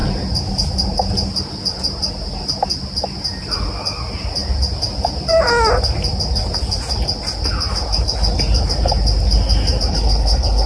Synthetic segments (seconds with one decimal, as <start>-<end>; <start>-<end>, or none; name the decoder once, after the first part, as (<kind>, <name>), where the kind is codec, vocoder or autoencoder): 9.9-10.7 (codec, HILCodec)